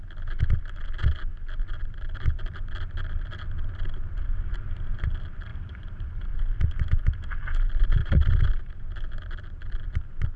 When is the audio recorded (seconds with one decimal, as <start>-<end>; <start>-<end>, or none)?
0.0-5.5; 6.3-8.0; 8.7-10.4